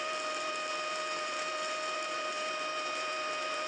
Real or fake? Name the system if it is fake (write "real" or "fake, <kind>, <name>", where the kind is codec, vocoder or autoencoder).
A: fake, vocoder, BigVGAN v2